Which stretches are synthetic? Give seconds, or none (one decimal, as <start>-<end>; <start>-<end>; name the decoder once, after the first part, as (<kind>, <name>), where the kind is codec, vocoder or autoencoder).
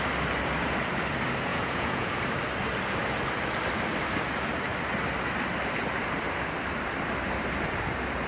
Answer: 1.5-2.1 (vocoder, Vocos)